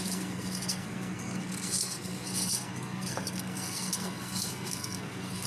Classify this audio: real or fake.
fake